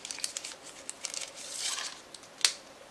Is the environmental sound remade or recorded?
recorded